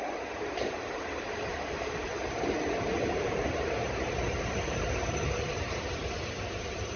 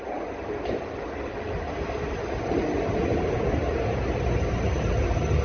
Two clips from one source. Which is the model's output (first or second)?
first